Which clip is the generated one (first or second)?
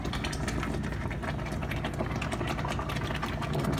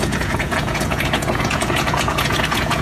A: second